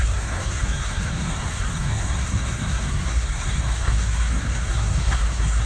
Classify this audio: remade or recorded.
remade